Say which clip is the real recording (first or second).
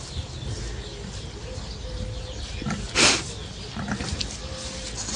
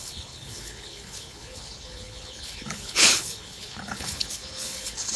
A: first